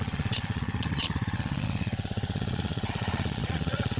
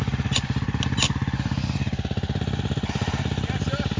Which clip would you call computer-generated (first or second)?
first